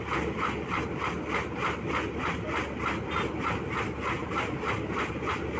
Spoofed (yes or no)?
no